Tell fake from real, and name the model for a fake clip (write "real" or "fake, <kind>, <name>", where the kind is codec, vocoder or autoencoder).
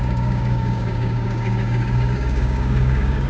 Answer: fake, codec, DAC